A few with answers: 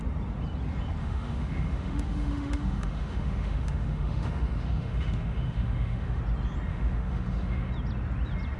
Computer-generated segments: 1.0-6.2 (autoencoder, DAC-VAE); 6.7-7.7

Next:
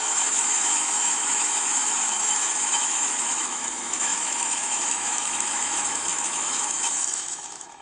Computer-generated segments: 0.0-7.8 (autoencoder, DAC-VAE)